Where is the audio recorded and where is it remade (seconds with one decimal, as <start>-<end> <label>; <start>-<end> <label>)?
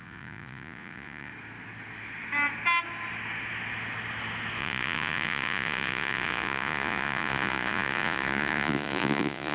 0.0-1.3 remade; 1.3-4.6 recorded; 4.6-9.5 remade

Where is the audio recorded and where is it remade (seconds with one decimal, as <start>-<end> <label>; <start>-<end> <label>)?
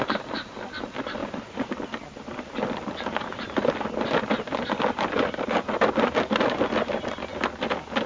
0.0-8.1 recorded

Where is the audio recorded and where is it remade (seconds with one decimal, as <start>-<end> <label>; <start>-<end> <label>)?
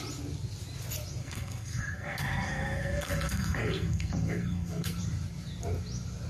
0.0-1.2 recorded; 1.2-5.0 remade; 5.0-6.3 recorded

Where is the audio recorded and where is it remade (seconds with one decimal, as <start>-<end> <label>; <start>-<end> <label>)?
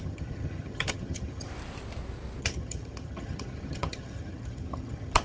0.0-1.5 remade; 1.5-2.4 recorded; 2.4-5.2 remade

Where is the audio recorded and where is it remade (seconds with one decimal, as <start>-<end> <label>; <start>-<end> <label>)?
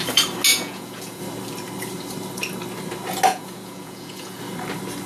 0.0-0.5 recorded; 0.5-1.2 remade; 1.2-3.3 recorded; 3.3-4.4 remade; 4.4-5.1 recorded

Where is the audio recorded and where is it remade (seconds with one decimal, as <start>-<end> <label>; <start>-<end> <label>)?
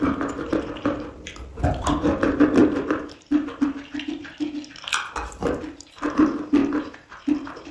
0.0-2.6 remade; 2.6-5.6 recorded; 5.6-6.6 remade; 6.6-7.7 recorded